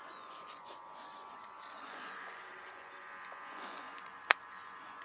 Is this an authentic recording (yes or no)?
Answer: no